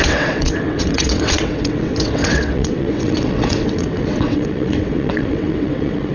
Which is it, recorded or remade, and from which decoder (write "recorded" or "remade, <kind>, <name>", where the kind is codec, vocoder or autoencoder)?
remade, vocoder, WaveNeXt